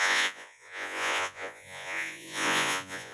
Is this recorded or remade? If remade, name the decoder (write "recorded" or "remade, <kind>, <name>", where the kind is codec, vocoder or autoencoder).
remade, vocoder, Vocos